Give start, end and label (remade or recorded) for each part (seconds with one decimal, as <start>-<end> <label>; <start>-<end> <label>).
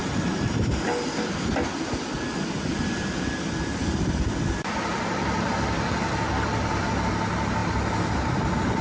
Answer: 0.0-0.7 remade; 0.7-2.7 recorded; 2.7-7.1 remade; 7.1-8.8 recorded